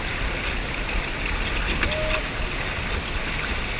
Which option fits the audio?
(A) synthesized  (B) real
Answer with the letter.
B